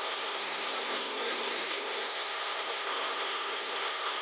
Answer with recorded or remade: remade